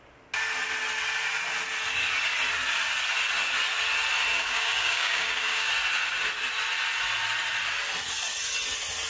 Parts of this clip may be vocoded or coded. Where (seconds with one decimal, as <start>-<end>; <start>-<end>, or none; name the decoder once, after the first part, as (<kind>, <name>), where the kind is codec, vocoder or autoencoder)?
4.3-5.7 (codec, DAC)